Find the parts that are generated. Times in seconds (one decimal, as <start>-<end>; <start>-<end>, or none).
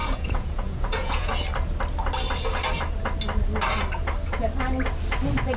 0.0-1.3